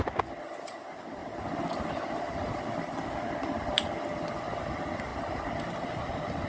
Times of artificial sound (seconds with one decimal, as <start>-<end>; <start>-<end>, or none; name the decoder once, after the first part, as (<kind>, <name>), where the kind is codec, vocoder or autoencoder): none